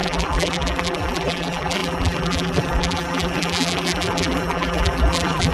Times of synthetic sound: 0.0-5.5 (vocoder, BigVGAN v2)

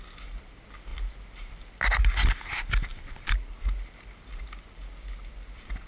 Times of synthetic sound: none

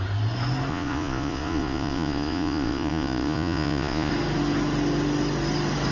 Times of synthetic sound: 0.7-4.1 (vocoder, Vocos)

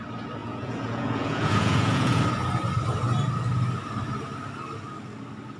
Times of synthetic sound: 0.4-2.2 (vocoder, Vocos)